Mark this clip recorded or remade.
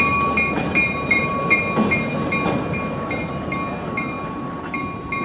recorded